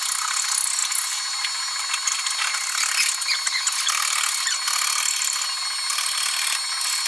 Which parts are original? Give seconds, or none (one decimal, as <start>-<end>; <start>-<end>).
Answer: 0.0-7.1

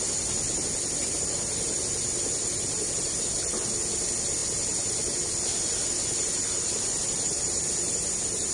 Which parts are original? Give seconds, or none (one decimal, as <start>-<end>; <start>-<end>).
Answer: 0.0-8.5

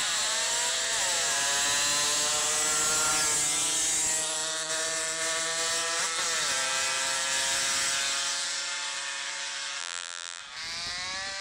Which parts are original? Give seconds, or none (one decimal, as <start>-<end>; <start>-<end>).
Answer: 0.0-9.8; 10.4-11.4

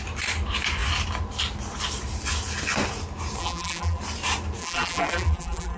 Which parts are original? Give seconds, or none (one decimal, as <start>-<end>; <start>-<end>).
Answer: 0.0-3.4; 4.0-4.6

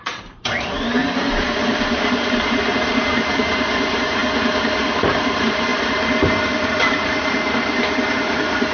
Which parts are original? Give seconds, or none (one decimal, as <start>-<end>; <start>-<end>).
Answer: 1.0-1.6; 4.2-4.7

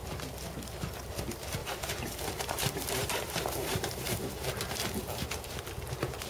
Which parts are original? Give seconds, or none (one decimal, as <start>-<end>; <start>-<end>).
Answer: 0.0-1.6; 5.4-6.3